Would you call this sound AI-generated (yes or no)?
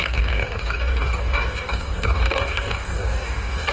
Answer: yes